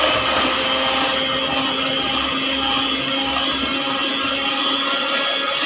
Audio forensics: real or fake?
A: real